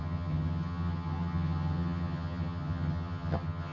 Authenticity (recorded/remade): remade